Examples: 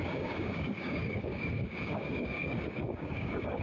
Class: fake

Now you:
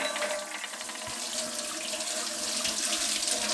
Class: real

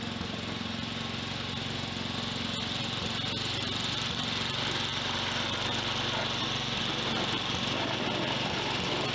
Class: real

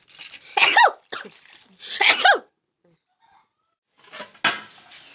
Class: real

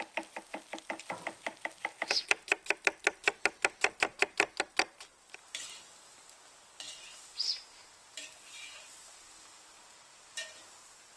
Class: real